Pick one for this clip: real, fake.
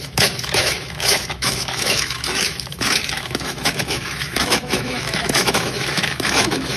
fake